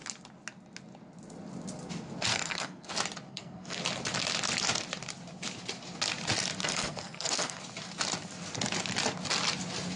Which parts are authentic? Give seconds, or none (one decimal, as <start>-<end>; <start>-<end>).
0.0-2.3; 2.9-3.3; 3.8-6.6; 7.6-10.0